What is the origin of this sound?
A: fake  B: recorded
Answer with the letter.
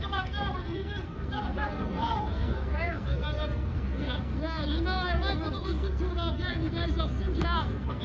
A